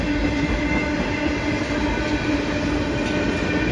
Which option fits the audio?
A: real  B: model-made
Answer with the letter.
A